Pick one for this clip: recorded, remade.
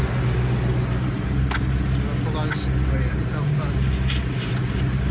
recorded